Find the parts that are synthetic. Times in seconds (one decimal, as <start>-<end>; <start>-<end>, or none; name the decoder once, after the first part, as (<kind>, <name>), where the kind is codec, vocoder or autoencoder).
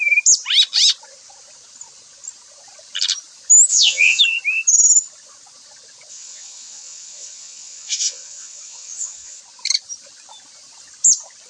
3.7-4.2 (vocoder, WaveNeXt); 6.1-9.4